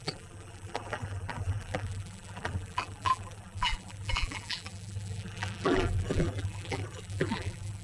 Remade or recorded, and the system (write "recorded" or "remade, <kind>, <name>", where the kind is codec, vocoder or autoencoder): remade, vocoder, BigVGAN v2